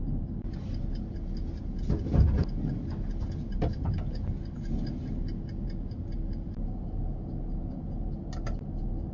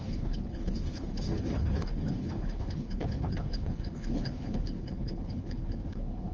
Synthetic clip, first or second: second